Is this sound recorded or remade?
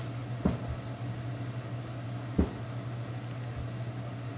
recorded